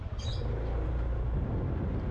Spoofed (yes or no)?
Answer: no